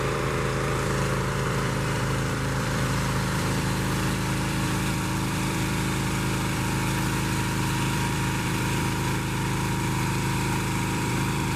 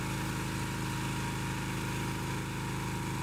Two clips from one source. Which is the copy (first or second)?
first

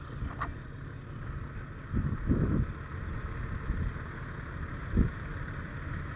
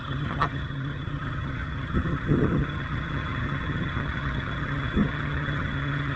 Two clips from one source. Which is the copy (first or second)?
second